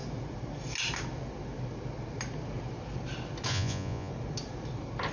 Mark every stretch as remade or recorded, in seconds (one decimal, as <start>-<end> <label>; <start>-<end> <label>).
0.0-3.5 recorded; 3.5-4.1 remade; 4.1-5.1 recorded